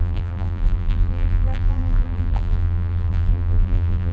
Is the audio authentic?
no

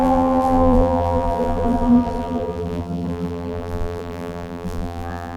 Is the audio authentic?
no